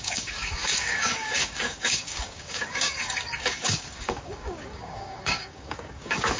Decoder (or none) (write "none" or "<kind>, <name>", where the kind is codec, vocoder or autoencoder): codec, DAC